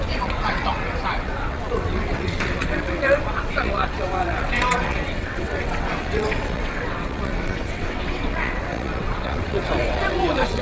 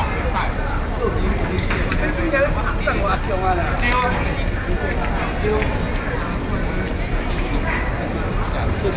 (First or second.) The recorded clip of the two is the second